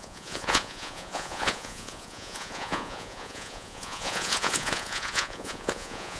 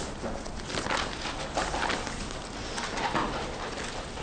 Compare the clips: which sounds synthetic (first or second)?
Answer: first